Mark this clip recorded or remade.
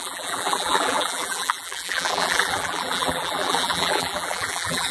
remade